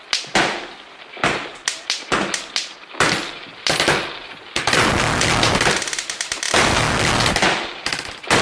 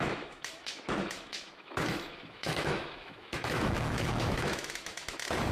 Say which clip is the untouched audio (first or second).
first